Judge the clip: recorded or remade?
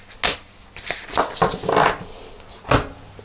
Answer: recorded